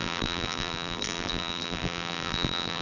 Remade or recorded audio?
remade